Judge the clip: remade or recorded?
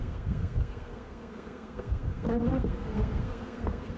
remade